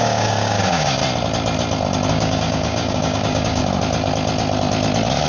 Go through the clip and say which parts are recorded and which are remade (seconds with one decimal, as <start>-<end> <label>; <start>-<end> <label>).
0.0-1.0 remade; 1.0-2.1 recorded; 2.1-3.6 remade; 3.6-5.3 recorded